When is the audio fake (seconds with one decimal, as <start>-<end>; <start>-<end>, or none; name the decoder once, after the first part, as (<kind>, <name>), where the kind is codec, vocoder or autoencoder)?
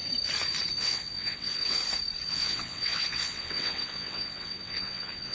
0.8-1.8 (vocoder, WaveNeXt); 2.3-5.3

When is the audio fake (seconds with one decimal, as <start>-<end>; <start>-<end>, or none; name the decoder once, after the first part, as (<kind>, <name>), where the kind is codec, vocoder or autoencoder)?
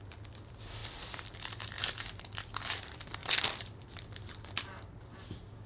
none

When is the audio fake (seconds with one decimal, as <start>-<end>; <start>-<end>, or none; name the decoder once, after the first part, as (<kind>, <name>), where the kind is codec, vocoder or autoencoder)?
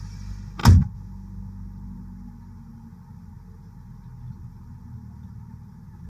none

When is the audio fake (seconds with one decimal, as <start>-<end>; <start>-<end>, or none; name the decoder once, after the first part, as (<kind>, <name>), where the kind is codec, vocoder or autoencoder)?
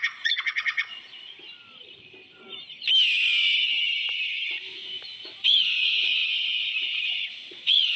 0.0-1.3 (vocoder, Vocos); 5.4-8.0